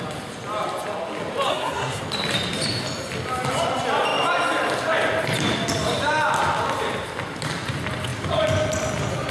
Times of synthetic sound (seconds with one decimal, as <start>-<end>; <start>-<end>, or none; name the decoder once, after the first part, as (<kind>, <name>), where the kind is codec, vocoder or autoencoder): 1.5-2.0 (codec, SNAC)